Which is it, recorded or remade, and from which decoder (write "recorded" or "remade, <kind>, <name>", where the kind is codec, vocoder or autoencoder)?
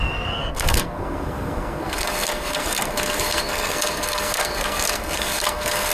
remade, codec, SNAC